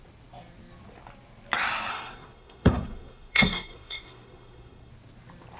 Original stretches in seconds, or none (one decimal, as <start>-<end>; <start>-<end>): 0.0-1.9; 4.9-5.6